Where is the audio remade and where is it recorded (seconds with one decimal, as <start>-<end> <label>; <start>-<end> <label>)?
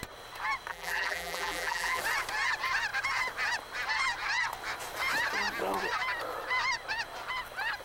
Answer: 0.0-0.7 recorded; 0.7-2.0 remade; 2.0-7.8 recorded